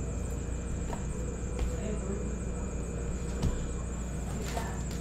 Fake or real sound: real